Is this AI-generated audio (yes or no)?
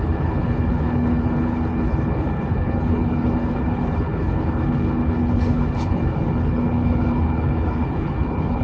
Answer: yes